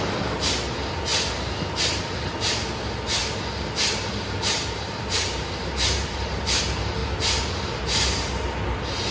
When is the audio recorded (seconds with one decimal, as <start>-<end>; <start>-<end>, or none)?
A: 0.0-3.2; 6.6-7.0; 8.3-9.1

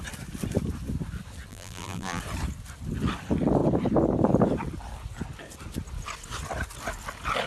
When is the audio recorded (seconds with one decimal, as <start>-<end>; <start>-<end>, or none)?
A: 0.0-1.5; 2.2-7.5

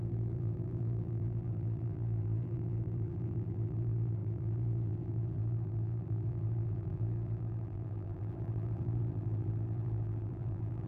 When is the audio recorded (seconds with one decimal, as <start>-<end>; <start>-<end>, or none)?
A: none